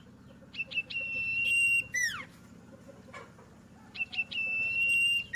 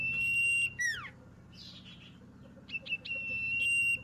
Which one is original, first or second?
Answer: second